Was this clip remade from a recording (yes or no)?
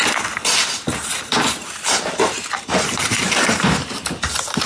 no